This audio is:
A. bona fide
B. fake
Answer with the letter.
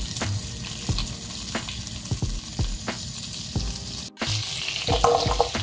A